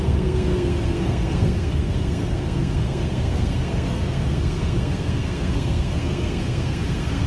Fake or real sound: fake